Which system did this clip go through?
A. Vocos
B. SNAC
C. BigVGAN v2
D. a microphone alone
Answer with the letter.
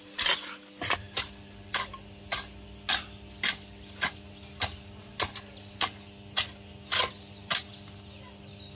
D